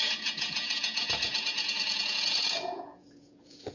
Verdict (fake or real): fake